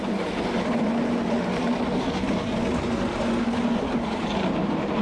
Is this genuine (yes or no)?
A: yes